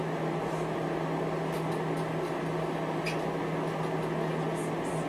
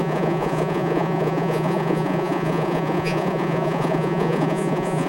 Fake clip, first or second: second